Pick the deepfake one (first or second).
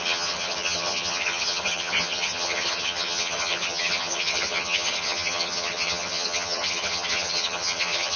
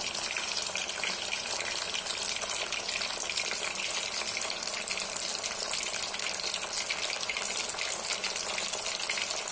first